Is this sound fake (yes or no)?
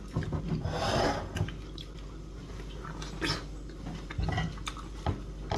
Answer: no